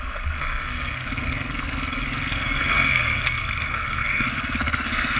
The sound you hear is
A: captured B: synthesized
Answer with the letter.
B